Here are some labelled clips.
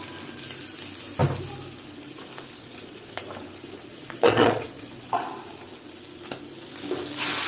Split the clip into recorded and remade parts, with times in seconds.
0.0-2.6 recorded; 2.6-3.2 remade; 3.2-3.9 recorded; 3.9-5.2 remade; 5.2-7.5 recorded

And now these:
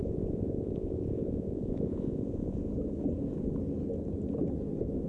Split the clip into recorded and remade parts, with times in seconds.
0.0-2.7 remade; 2.7-5.1 recorded

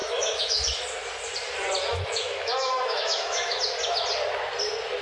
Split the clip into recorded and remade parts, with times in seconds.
0.0-0.6 remade; 0.6-1.9 recorded; 1.9-3.6 remade; 3.6-5.0 recorded

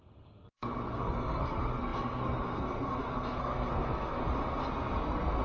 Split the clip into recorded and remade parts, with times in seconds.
0.0-4.2 remade; 4.2-5.0 recorded; 5.0-5.4 remade

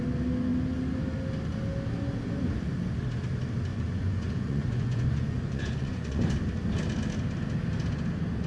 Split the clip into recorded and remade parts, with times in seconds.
0.0-3.7 recorded; 3.7-6.3 remade; 6.3-8.5 recorded

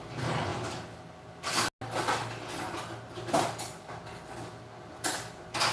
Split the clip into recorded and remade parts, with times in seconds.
0.0-5.7 recorded

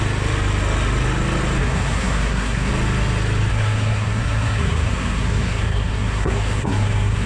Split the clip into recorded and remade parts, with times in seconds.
0.0-1.6 recorded; 1.6-2.7 remade; 2.7-3.5 recorded; 3.5-7.3 remade

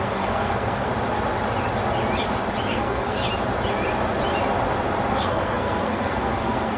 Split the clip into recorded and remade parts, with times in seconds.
0.0-0.9 remade; 0.9-2.7 recorded; 2.7-3.2 remade; 3.2-5.1 recorded; 5.1-6.8 remade